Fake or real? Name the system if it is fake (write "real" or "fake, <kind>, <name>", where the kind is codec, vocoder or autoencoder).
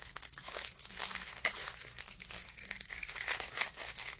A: fake, codec, SNAC